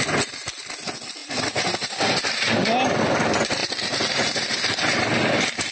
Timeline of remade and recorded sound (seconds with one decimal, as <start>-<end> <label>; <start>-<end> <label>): 0.0-5.7 recorded